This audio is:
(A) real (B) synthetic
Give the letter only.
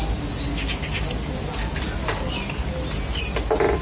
A